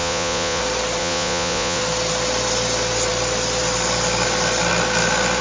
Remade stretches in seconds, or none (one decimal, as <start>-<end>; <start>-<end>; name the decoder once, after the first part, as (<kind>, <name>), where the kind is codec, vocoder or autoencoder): 0.0-0.6 (vocoder, Vocos); 1.0-1.8

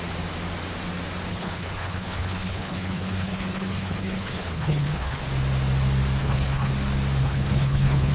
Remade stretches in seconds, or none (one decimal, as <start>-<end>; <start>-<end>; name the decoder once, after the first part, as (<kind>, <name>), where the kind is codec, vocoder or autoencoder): 1.3-5.2 (codec, HILCodec); 6.2-6.7; 7.2-8.1

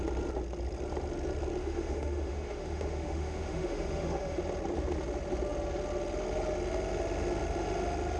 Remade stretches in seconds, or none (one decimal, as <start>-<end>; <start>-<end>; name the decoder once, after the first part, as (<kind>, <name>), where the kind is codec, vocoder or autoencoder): 1.6-4.4 (autoencoder, DAC-VAE)

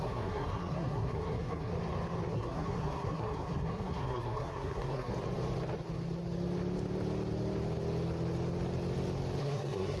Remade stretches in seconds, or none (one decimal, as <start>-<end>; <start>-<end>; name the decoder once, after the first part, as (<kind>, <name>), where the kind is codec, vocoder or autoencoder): 0.0-1.7 (codec, SNAC); 2.3-5.1; 9.4-10.0